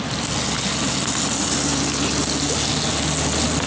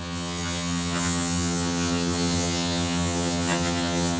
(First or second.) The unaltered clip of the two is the first